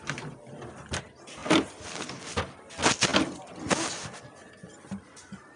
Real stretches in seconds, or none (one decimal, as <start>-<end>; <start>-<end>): 0.0-5.6